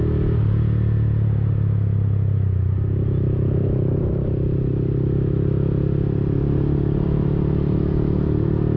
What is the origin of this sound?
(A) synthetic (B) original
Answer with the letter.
B